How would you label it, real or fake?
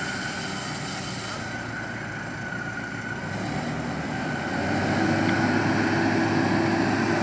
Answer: real